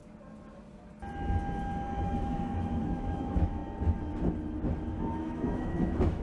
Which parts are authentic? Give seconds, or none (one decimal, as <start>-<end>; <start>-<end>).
0.0-2.0; 3.6-4.9